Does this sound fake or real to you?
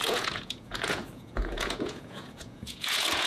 fake